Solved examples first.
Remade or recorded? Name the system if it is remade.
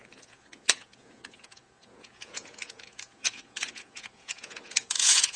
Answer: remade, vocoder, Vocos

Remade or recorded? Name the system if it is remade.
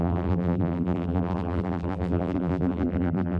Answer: remade, vocoder, BigVGAN v2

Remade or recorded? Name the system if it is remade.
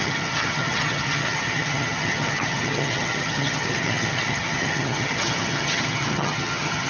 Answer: remade, vocoder, HiFi-GAN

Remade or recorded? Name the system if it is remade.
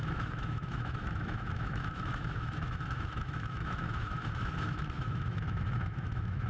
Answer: remade, autoencoder, DAC-VAE